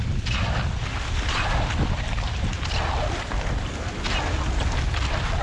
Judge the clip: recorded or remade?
recorded